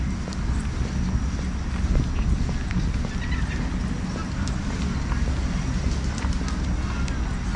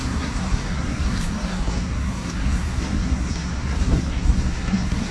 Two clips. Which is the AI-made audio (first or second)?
second